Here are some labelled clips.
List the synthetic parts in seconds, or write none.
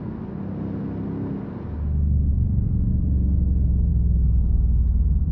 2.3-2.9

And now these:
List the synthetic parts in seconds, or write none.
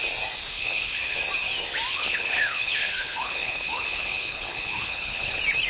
0.5-1.2; 1.9-5.3